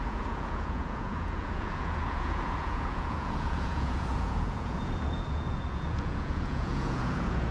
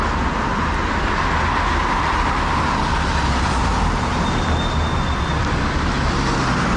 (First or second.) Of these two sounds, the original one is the second